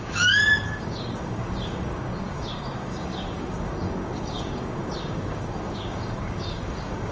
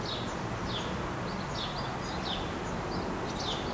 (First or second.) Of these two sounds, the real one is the second